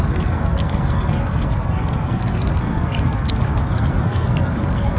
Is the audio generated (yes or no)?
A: yes